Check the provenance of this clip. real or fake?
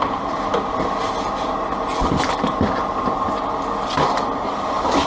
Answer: real